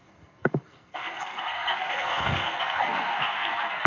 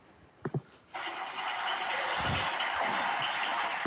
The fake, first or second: first